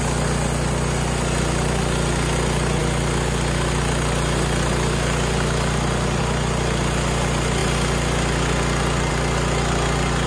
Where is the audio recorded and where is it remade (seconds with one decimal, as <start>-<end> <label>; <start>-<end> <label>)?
0.0-10.3 recorded